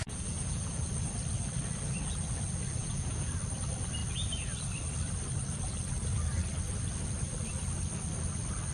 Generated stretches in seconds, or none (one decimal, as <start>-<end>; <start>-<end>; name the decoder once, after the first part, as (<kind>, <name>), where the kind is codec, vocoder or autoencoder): 0.0-0.9 (vocoder, Vocos); 2.8-3.3